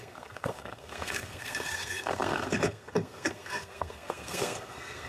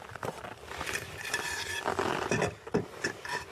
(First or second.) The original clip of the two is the second